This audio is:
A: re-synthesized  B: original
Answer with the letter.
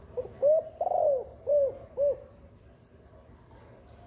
B